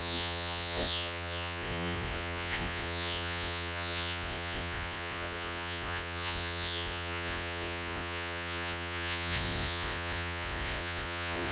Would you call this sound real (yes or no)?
no